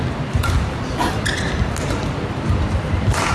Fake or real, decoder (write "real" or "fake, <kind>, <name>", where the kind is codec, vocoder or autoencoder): real